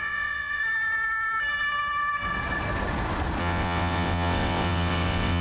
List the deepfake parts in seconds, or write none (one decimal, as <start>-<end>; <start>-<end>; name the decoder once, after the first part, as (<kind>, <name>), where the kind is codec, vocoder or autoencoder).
0.0-0.6 (vocoder, WaveNeXt); 3.4-5.4